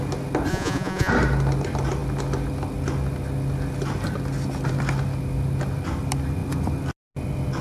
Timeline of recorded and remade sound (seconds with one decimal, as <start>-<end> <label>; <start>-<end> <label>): 0.0-0.5 recorded; 0.5-1.1 remade; 1.1-7.6 recorded